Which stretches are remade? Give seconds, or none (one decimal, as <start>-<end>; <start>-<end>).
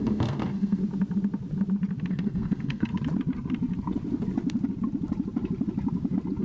0.0-0.8; 2.1-2.9